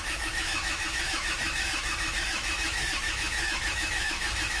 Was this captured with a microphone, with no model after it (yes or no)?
no